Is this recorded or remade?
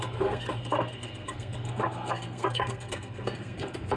remade